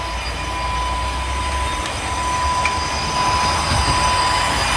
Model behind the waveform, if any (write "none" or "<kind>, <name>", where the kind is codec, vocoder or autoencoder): none